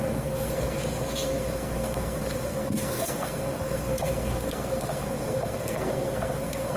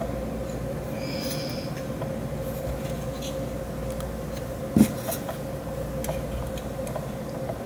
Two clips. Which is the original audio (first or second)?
second